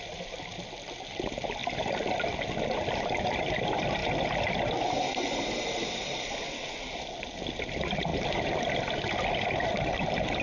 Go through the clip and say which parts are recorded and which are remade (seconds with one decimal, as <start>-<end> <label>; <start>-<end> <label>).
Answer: 0.0-10.4 recorded